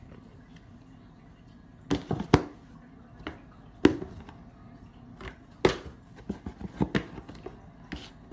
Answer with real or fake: real